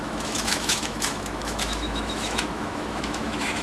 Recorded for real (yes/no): no